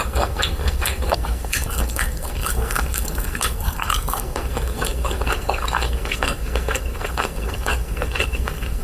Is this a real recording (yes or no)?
no